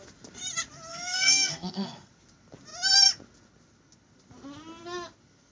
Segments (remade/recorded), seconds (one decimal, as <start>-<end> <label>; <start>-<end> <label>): 0.0-0.9 recorded; 0.9-2.1 remade; 2.1-5.5 recorded